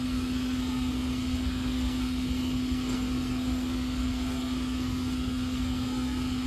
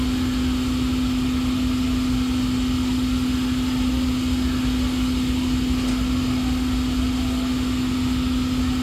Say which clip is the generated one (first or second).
first